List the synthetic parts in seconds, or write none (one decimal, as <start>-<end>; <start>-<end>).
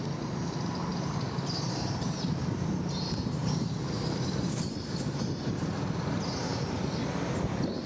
0.9-5.6